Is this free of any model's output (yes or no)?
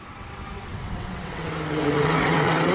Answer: no